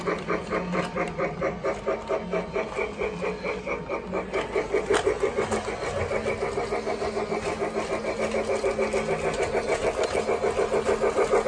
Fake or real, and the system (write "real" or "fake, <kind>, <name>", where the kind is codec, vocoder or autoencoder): real